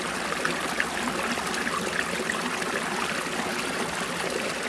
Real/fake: real